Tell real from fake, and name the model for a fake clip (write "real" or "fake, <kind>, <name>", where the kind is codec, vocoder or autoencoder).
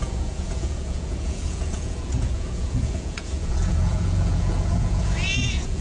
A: fake, vocoder, Vocos